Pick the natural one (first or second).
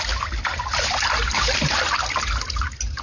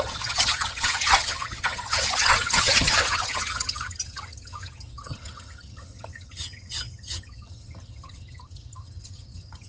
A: first